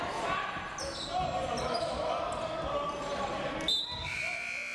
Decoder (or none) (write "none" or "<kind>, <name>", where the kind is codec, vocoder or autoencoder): none